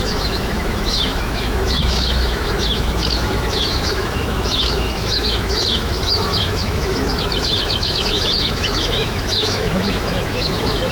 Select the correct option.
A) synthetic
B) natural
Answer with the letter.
A